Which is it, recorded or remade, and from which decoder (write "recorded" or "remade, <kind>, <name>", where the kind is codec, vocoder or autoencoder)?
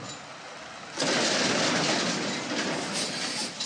recorded